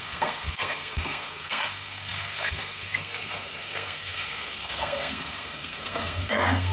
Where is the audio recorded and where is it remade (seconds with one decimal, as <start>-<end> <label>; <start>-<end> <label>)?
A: 0.0-6.7 remade